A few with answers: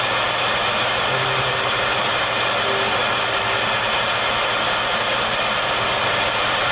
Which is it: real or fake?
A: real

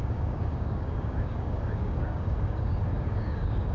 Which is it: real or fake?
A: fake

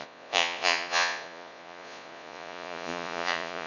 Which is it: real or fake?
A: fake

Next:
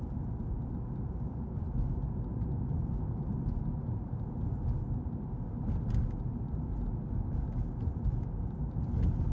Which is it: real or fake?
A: real